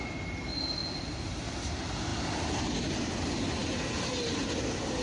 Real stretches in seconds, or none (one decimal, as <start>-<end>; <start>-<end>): 0.0-5.0